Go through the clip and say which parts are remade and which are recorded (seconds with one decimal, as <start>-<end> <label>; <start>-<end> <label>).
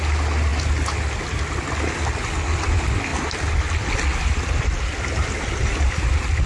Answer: 0.0-6.5 recorded